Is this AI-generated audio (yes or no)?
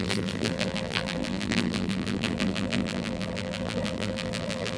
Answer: yes